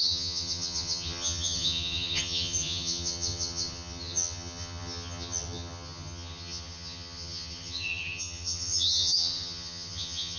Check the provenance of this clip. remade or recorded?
remade